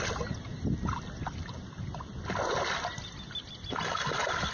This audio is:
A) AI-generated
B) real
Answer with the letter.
B